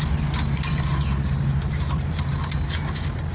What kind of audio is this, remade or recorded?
recorded